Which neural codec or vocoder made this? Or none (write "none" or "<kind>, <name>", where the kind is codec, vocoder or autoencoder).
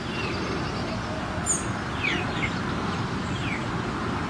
none